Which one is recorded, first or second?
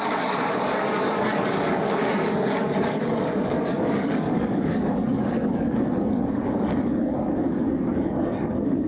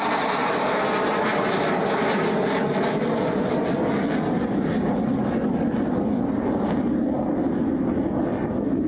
second